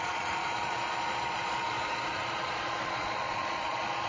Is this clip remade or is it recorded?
remade